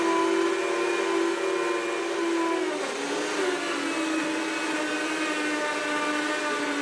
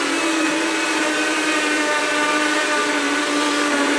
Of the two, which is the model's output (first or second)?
second